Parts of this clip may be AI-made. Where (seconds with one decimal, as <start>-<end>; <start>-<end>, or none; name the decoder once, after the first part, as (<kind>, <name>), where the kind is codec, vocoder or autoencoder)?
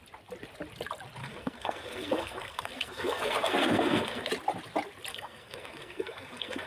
1.2-4.3 (codec, SNAC); 5.1-6.7